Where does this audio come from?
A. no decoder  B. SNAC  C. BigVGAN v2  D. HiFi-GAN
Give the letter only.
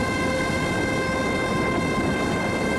A